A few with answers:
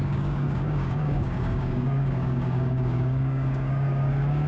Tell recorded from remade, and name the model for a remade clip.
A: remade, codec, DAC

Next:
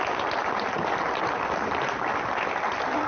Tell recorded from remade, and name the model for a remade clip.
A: recorded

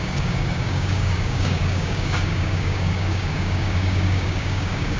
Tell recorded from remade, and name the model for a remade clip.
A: remade, codec, DAC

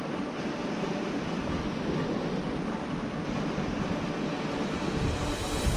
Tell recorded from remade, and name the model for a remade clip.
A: recorded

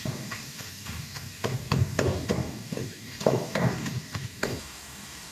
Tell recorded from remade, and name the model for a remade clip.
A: remade, codec, DAC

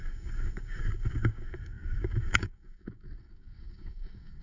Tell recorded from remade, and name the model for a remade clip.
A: remade, codec, DAC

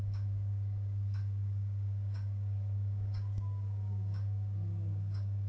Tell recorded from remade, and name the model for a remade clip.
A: remade, codec, DAC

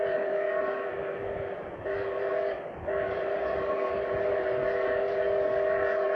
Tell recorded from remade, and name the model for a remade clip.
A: remade, codec, DAC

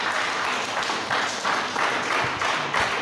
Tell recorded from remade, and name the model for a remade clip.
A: recorded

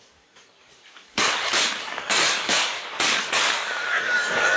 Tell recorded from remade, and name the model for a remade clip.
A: remade, codec, DAC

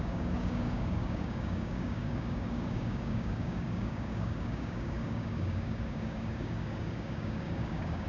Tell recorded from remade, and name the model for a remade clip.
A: remade, codec, DAC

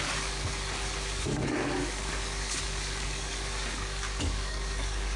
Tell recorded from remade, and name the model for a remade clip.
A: remade, codec, DAC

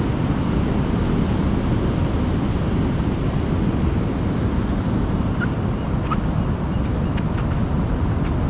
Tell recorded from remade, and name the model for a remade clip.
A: recorded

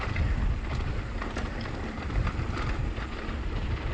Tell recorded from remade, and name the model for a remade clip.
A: recorded